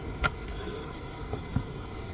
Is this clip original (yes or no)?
no